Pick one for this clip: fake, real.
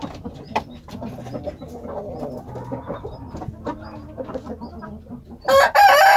real